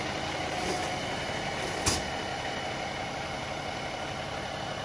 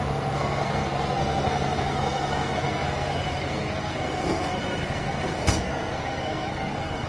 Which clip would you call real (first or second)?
first